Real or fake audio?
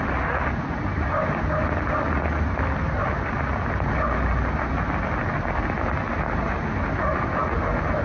real